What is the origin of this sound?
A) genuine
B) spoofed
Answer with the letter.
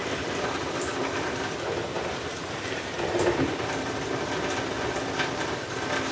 A